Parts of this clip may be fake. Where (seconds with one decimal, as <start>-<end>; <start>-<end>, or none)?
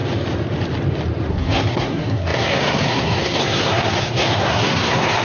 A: 1.3-5.2